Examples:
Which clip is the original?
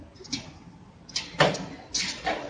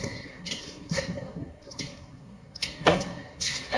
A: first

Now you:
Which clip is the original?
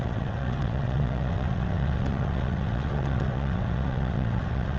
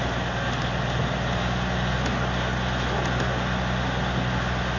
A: second